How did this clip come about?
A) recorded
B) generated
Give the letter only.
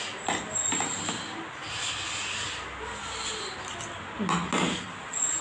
A